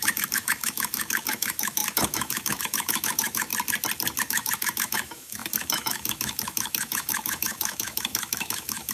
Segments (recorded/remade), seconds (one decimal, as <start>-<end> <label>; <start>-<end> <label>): 0.0-3.5 remade; 3.5-4.2 recorded; 4.2-8.9 remade